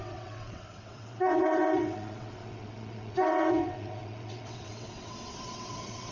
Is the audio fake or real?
fake